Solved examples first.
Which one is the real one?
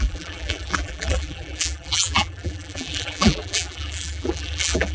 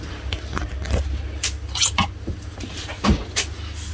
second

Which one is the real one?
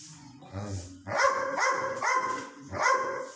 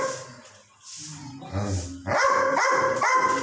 second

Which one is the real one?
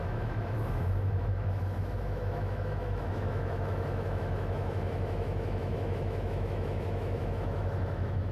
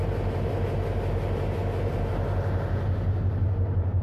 second